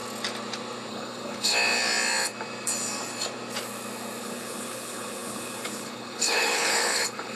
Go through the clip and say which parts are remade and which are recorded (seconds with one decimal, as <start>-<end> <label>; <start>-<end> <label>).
0.0-0.9 recorded; 0.9-1.5 remade; 1.5-4.2 recorded; 4.2-7.4 remade